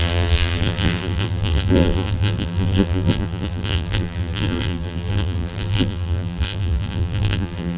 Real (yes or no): no